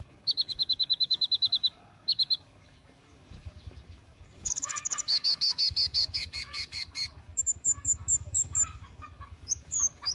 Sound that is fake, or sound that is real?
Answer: fake